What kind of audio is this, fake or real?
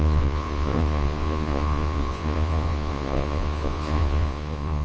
fake